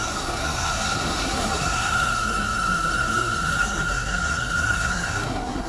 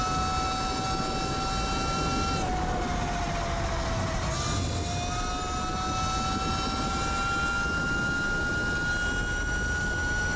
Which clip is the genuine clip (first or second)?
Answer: second